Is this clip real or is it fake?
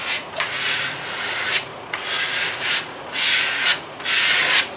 fake